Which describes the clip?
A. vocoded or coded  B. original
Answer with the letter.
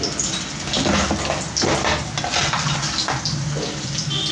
B